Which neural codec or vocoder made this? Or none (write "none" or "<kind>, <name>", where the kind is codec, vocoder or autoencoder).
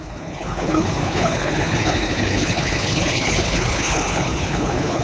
codec, HILCodec